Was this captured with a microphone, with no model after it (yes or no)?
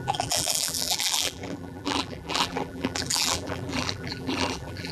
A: no